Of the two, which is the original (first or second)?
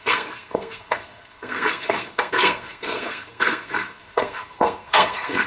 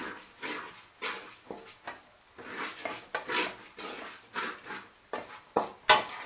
second